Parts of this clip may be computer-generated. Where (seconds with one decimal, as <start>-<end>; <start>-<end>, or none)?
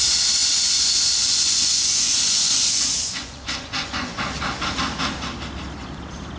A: 0.4-4.2